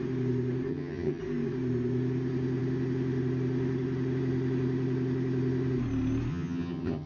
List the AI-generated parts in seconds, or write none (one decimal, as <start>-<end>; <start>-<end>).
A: 0.7-1.2; 6.3-7.1

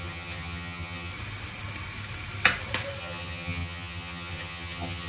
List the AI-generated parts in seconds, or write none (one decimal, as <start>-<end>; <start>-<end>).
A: 0.0-1.1; 3.0-5.1

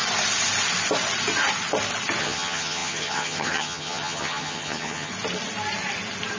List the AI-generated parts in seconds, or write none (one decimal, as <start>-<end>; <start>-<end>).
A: 2.2-5.1

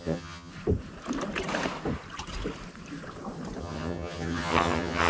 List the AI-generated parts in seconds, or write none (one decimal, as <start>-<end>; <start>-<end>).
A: 0.0-0.5; 3.6-5.1

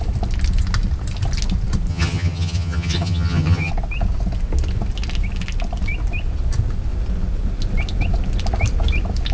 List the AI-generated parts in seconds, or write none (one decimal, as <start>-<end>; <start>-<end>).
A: 1.9-3.7

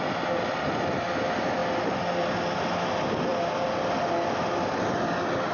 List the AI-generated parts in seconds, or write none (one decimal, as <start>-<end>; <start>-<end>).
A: none